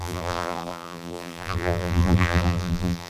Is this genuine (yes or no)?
no